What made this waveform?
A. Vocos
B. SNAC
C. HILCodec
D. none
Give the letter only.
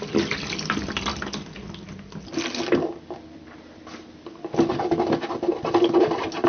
D